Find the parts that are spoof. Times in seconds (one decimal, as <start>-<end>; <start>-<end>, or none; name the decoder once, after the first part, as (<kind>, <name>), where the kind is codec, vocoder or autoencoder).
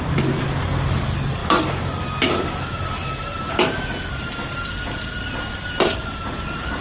none